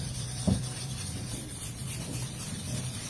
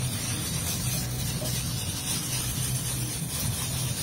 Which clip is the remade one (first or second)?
first